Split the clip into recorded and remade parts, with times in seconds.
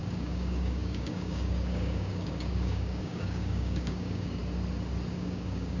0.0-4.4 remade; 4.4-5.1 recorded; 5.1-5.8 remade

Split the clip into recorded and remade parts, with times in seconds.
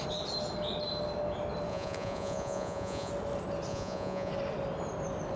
0.0-1.7 recorded; 1.7-3.1 remade; 3.1-3.7 recorded; 3.7-4.3 remade; 4.3-5.4 recorded